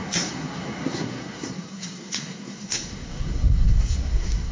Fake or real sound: fake